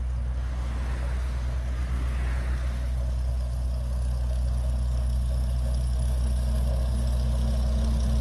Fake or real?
real